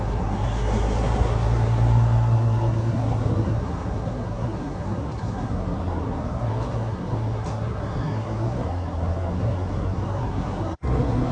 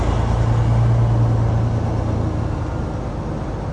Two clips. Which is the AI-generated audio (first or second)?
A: first